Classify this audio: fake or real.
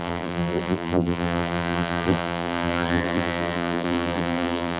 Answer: fake